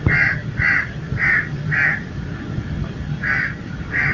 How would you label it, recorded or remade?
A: recorded